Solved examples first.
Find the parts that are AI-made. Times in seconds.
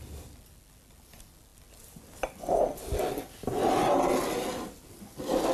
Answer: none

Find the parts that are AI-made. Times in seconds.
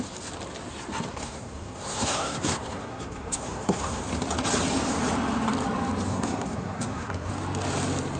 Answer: 1.1-4.0 (codec, SNAC); 6.1-7.3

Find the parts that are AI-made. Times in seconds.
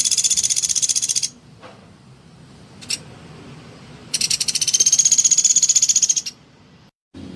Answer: none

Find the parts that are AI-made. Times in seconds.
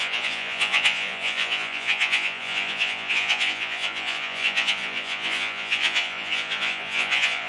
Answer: 0.0-7.5 (vocoder, Vocos)